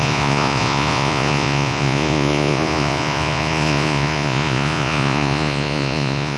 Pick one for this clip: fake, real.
fake